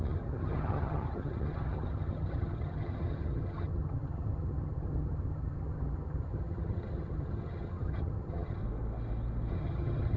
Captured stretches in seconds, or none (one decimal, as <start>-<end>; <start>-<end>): 8.6-9.5